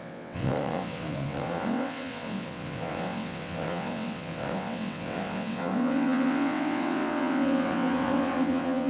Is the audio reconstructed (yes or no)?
yes